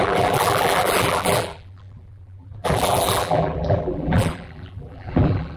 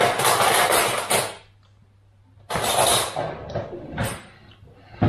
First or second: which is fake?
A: first